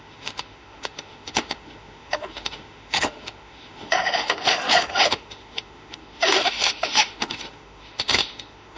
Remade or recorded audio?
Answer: remade